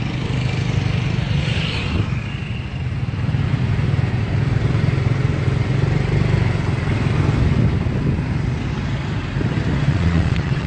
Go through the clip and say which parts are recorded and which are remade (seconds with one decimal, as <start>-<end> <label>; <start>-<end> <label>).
0.0-9.9 recorded; 9.9-10.7 remade